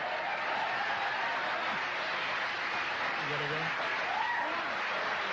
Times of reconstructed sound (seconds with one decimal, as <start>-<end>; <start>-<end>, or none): none